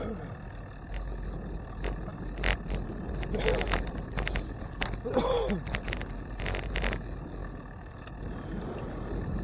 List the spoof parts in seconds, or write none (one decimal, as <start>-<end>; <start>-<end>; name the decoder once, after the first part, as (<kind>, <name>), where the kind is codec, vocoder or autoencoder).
none